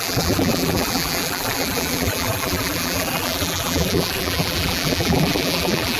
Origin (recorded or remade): remade